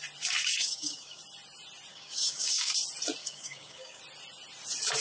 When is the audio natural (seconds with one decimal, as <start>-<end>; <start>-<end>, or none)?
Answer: 0.0-0.4; 1.2-1.9; 2.7-3.2; 4.0-5.0